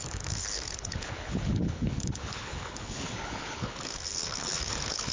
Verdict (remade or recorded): remade